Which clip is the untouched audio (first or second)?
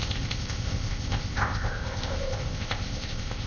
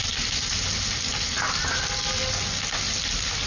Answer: second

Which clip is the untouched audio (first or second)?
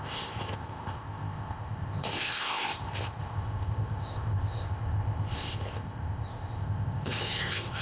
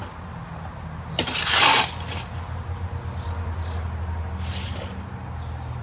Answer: second